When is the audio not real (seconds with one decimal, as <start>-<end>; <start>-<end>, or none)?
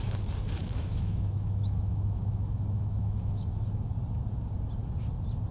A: 0.6-3.9